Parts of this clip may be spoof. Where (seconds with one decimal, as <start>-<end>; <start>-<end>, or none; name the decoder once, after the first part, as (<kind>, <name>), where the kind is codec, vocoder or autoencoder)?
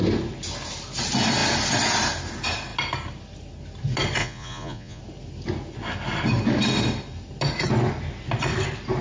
4.2-5.0 (vocoder, Vocos)